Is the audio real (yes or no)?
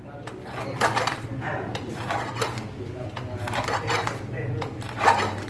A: yes